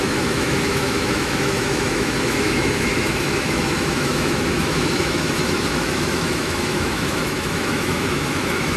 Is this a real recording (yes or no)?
no